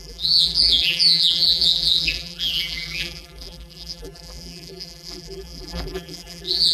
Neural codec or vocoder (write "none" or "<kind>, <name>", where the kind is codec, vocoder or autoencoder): vocoder, BigVGAN v2